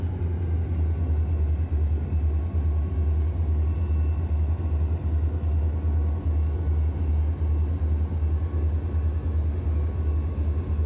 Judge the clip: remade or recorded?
recorded